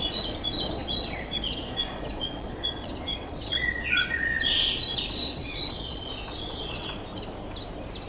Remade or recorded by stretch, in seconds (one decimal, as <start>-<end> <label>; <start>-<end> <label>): 0.0-7.1 remade; 7.1-8.1 recorded